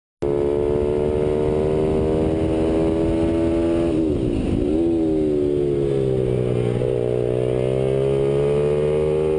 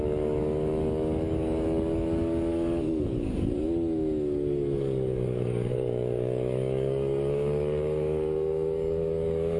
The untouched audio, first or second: first